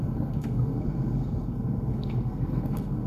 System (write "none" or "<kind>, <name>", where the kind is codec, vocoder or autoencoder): codec, SNAC